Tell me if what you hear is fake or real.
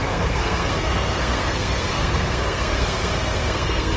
fake